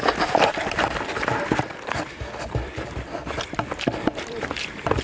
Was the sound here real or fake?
fake